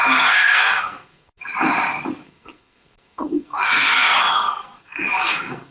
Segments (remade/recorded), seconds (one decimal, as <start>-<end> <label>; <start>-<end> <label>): 0.0-1.4 remade; 1.4-2.2 recorded; 2.2-5.7 remade